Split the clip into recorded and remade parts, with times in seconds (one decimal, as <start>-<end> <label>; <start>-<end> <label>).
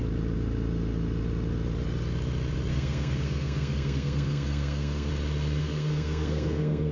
0.0-2.7 recorded; 2.7-5.1 remade; 5.1-5.6 recorded; 5.6-6.9 remade